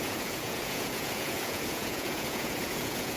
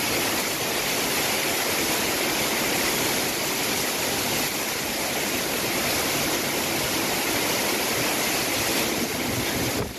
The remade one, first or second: first